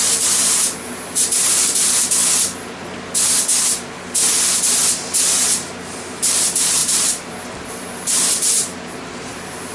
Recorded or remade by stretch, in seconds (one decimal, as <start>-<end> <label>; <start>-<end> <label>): 0.0-2.2 remade; 2.2-6.1 recorded; 6.1-9.7 remade